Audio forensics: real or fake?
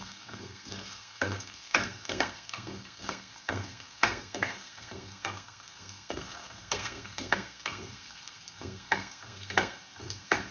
fake